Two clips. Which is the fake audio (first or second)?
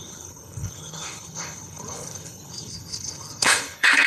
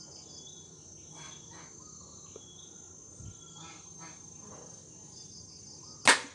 first